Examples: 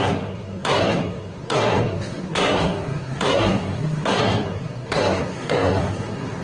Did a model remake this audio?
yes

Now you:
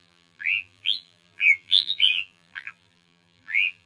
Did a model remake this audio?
yes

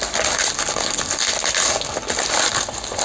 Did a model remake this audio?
no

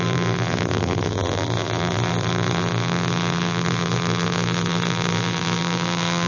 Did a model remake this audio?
yes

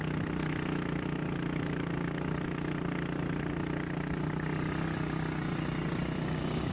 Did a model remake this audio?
no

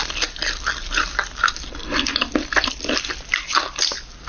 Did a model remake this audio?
no